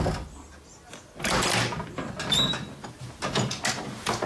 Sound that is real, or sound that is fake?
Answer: real